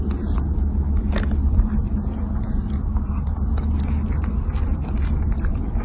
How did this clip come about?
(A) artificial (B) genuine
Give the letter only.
B